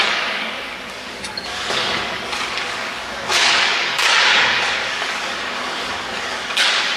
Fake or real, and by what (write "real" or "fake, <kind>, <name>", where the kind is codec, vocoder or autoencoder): fake, codec, DAC